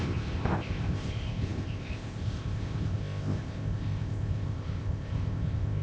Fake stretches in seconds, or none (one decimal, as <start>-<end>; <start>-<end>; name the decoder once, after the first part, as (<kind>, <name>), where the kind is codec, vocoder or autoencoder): 0.0-5.8 (codec, ZipCodec)